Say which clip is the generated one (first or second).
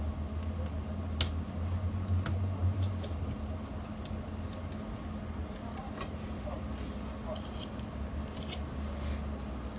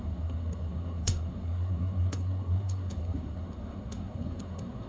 second